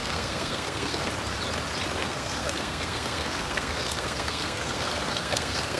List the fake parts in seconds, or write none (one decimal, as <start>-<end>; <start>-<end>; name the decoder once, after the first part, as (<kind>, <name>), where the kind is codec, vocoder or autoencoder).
0.0-1.1 (codec, SNAC); 2.0-5.8